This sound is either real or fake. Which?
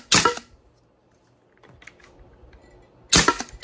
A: real